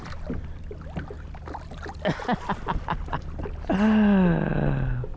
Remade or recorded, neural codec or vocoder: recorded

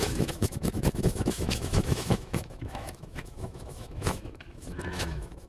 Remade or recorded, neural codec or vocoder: remade, autoencoder, DAC-VAE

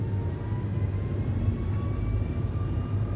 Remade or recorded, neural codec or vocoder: recorded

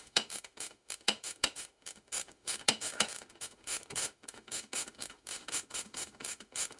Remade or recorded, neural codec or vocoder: remade, autoencoder, DAC-VAE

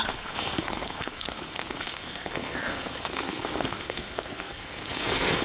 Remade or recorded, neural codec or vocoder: remade, codec, SNAC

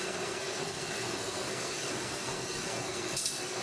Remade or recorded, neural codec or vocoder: remade, codec, SNAC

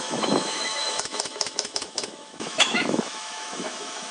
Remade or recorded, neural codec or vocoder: remade, autoencoder, DAC-VAE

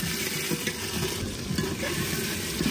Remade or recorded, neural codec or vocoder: remade, vocoder, BigVGAN v2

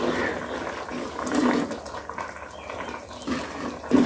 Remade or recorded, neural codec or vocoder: recorded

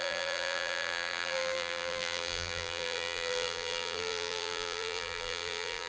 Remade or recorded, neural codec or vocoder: remade, vocoder, BigVGAN v2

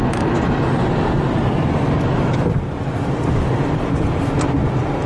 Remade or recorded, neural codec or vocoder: recorded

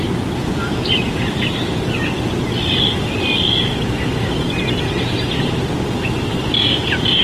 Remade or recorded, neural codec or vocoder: recorded